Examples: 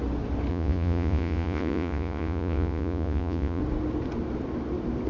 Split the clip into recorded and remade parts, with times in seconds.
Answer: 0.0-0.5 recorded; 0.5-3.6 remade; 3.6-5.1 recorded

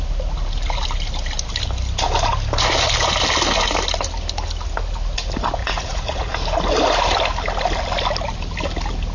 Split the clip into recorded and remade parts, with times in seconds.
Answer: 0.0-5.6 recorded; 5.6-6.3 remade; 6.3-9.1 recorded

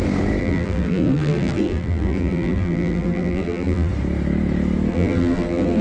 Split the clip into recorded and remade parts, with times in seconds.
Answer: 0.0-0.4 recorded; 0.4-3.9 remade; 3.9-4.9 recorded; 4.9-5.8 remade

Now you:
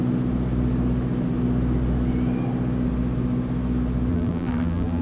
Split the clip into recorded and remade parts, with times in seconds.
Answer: 0.0-4.1 recorded; 4.1-5.0 remade